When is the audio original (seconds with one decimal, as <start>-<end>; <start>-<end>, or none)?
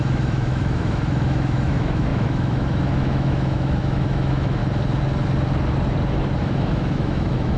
4.6-6.4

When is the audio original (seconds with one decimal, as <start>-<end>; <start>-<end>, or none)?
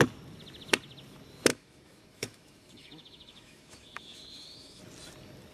0.0-1.5; 4.8-5.5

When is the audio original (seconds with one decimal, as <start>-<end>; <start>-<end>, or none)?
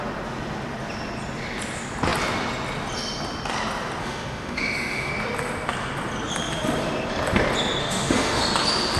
0.0-4.0; 5.1-7.8; 8.4-9.0